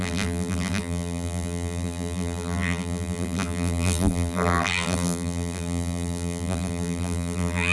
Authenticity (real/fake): fake